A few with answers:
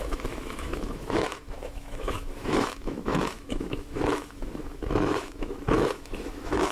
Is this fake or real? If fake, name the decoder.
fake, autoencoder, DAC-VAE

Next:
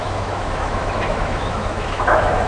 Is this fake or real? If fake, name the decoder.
fake, autoencoder, DAC-VAE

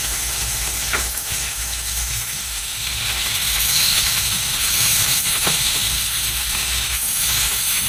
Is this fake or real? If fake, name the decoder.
fake, autoencoder, DAC-VAE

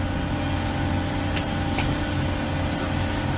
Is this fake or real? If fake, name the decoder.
real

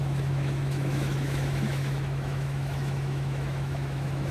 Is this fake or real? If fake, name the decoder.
fake, autoencoder, DAC-VAE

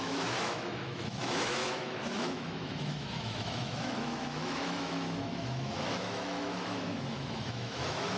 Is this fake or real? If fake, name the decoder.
fake, autoencoder, DAC-VAE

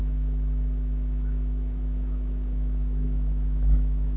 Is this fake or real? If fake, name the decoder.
fake, autoencoder, DAC-VAE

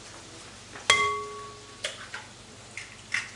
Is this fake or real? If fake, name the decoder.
real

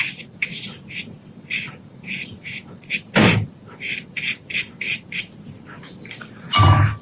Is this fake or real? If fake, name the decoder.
real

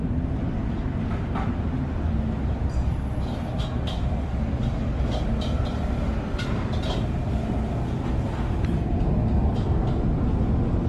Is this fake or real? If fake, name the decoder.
real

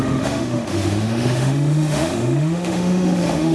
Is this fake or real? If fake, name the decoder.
fake, autoencoder, DAC-VAE